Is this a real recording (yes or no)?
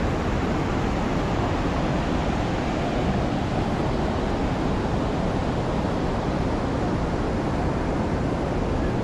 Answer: yes